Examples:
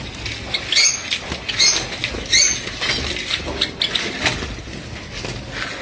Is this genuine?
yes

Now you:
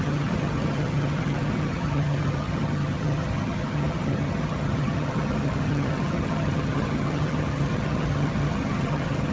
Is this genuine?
no